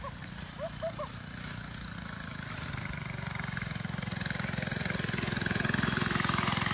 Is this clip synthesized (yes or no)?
no